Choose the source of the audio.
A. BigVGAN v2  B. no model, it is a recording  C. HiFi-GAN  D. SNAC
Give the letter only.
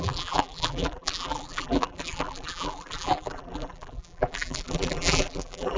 A